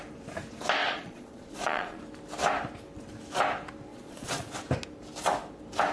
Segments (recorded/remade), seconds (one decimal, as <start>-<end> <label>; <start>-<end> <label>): 0.0-0.8 recorded; 0.8-2.0 remade; 2.0-3.9 recorded; 3.9-4.5 remade; 4.5-5.9 recorded